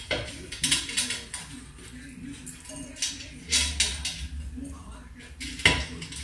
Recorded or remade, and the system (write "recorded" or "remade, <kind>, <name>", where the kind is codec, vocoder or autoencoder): recorded